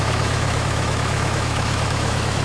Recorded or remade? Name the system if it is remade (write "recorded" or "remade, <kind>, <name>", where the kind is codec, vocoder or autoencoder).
remade, autoencoder, DAC-VAE